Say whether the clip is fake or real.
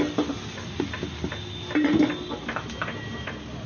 real